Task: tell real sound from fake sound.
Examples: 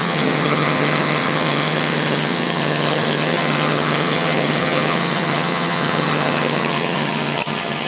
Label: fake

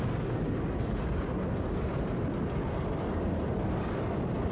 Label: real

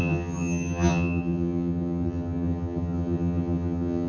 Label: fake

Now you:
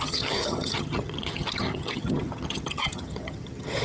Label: fake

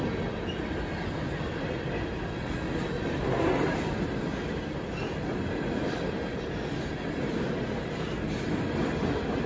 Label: real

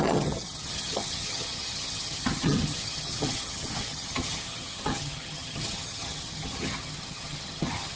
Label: fake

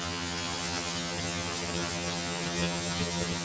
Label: fake